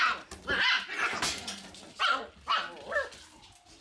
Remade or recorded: recorded